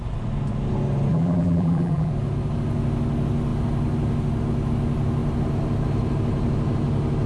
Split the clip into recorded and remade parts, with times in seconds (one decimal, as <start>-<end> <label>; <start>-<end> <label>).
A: 0.0-1.1 recorded; 1.1-2.1 remade; 2.1-7.3 recorded